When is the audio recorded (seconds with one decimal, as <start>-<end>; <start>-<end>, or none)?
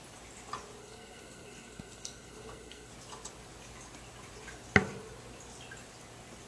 0.0-0.8; 2.9-6.5